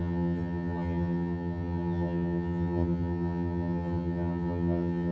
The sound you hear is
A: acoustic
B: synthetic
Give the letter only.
B